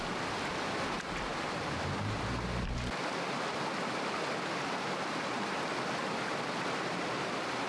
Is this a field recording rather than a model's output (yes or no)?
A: yes